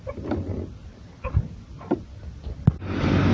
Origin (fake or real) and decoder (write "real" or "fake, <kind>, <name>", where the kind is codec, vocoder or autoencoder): real